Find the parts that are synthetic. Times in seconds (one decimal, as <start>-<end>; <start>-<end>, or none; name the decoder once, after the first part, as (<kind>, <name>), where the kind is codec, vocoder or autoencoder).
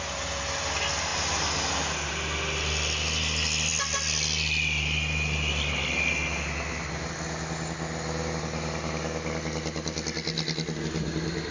none